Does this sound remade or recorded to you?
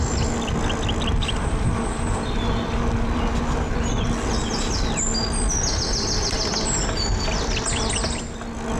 recorded